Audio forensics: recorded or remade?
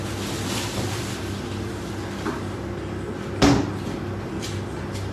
recorded